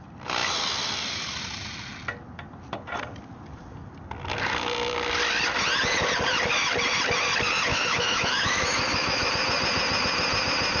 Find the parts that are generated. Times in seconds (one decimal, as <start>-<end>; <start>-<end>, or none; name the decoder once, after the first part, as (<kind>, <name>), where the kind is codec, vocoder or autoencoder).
7.7-9.3 (autoencoder, DAC-VAE)